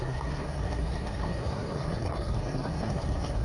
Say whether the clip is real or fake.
fake